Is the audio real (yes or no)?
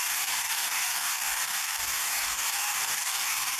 no